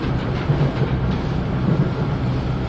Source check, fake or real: fake